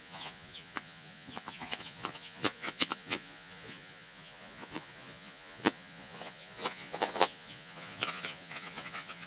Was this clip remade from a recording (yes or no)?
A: yes